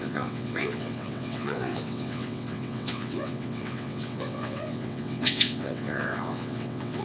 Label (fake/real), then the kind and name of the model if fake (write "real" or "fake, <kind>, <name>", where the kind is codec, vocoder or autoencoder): fake, vocoder, WaveNeXt